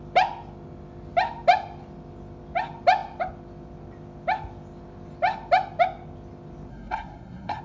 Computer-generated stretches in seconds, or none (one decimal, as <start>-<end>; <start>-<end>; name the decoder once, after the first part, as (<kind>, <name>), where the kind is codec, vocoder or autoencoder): 6.7-7.6 (codec, SNAC)